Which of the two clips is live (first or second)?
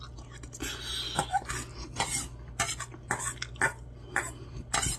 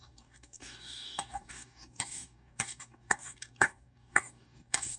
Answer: first